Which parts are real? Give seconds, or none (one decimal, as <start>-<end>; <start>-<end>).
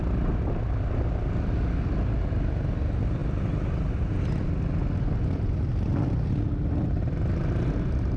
0.0-8.2